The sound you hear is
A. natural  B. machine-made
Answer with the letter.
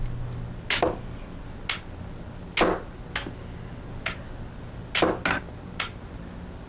A